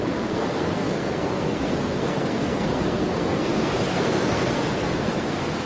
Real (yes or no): no